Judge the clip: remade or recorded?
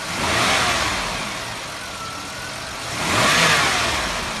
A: recorded